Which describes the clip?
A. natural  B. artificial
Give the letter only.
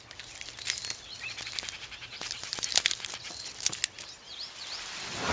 A